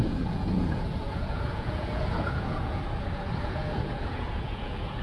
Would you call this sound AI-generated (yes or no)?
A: yes